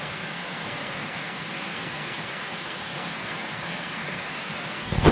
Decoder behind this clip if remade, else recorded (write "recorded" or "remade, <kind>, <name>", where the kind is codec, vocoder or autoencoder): remade, codec, SNAC